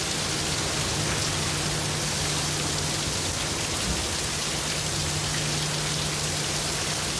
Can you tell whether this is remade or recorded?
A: recorded